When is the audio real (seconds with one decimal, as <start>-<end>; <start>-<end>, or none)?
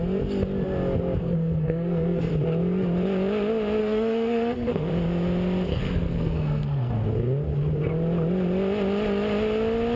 0.0-1.2; 2.3-3.8; 4.9-5.7; 6.9-10.0